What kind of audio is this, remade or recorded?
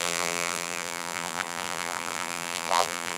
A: remade